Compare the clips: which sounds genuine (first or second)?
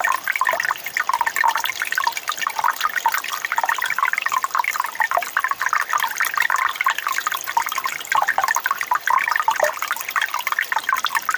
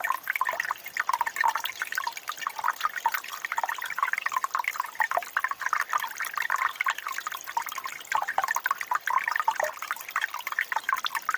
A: second